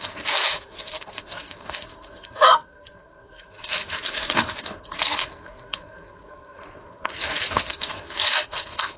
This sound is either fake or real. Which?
fake